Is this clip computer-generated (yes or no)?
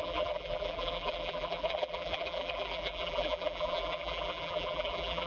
yes